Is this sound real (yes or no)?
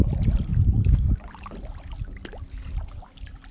yes